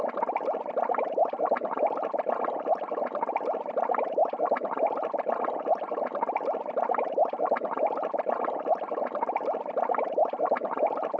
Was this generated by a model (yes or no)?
yes